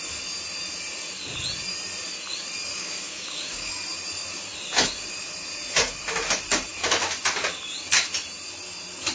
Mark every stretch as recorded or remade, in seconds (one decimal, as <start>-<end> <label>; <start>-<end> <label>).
0.0-2.7 recorded; 2.7-3.7 remade; 3.7-9.1 recorded